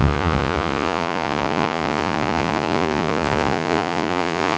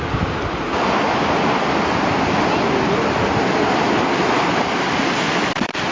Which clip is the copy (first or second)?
first